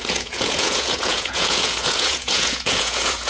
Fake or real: fake